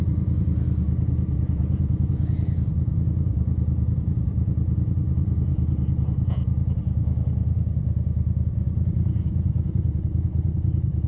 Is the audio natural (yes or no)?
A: no